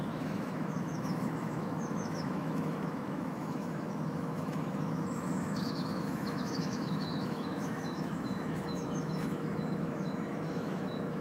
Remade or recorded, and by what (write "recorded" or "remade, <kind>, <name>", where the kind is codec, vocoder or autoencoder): remade, autoencoder, DAC-VAE